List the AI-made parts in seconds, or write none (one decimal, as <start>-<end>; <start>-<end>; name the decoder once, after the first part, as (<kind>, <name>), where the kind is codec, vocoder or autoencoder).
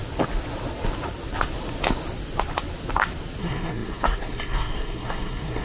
3.4-5.6 (codec, SNAC)